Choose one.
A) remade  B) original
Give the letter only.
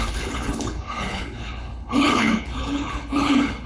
A